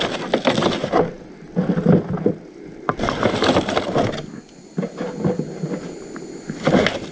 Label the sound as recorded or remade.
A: recorded